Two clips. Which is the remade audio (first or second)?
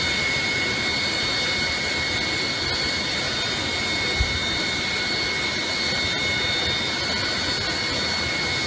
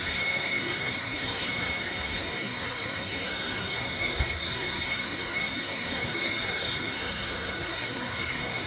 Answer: second